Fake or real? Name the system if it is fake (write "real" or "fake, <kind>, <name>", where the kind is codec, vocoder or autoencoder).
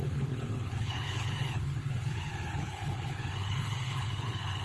fake, codec, HILCodec